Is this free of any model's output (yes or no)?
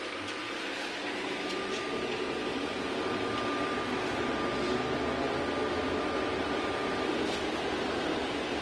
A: yes